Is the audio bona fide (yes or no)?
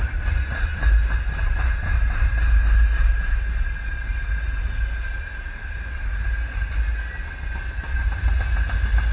yes